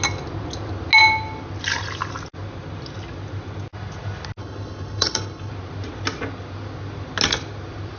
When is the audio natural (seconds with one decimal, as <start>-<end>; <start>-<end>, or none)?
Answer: 0.0-4.4; 5.5-8.0